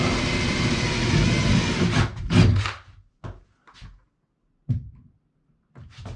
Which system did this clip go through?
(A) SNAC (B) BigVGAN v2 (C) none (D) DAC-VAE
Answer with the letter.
C